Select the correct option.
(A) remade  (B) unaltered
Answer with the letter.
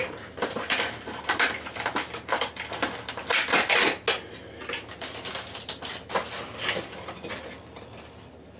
B